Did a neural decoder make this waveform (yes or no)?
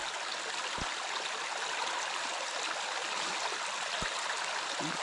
no